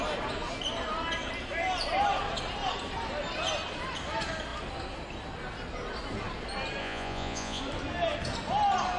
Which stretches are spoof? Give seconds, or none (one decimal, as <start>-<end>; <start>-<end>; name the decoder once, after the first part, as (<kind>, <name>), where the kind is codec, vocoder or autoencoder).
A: 6.8-7.6 (vocoder, Vocos)